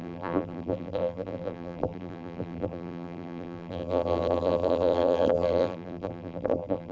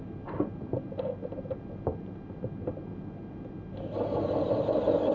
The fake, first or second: first